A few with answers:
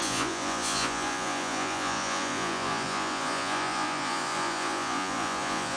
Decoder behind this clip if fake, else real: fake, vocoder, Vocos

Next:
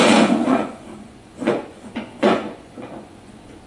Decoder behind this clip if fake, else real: fake, vocoder, Vocos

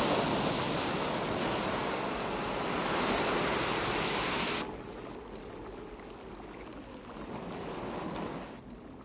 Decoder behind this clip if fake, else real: real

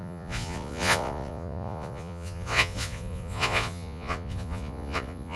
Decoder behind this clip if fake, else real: fake, vocoder, Vocos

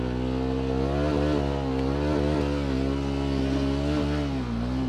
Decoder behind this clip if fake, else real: real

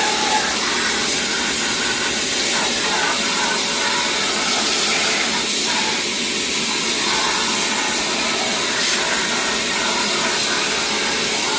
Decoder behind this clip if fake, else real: real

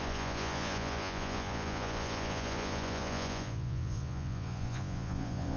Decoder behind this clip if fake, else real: fake, vocoder, Vocos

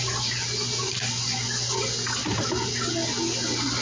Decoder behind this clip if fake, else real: real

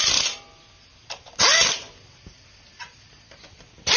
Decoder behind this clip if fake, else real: real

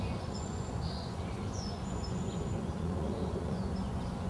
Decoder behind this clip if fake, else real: fake, vocoder, Vocos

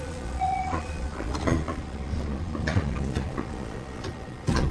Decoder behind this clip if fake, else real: fake, vocoder, Vocos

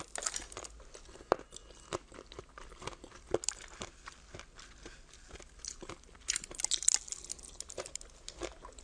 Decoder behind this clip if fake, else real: real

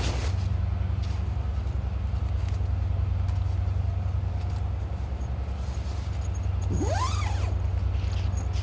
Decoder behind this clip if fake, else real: real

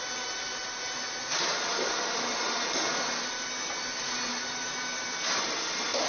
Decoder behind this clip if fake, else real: real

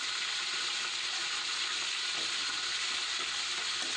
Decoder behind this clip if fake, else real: real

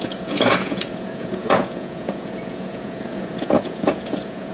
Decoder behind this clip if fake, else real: fake, vocoder, Vocos